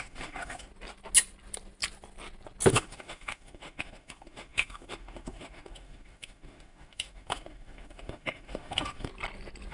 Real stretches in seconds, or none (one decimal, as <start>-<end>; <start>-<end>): 0.7-2.7; 9.1-9.7